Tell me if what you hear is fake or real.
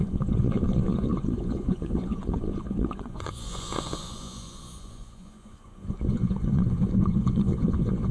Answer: fake